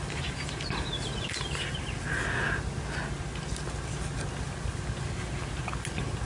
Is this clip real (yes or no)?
yes